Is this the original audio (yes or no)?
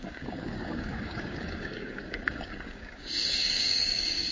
no